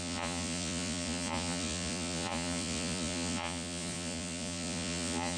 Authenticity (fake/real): fake